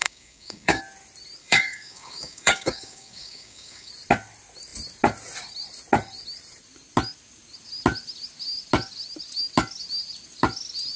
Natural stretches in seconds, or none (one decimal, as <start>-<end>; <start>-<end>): 0.8-1.4; 3.9-11.0